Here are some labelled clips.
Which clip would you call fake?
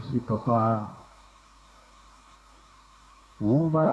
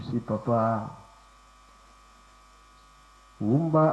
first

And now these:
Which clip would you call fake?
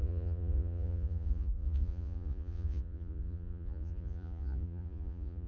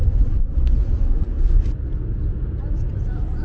first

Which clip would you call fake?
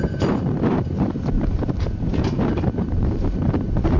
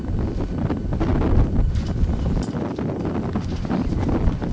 first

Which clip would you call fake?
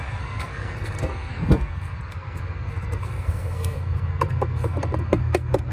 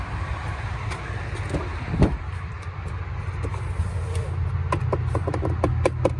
first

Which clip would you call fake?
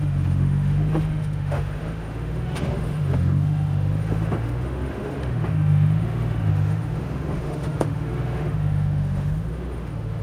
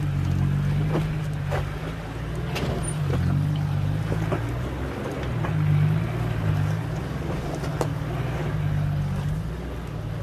first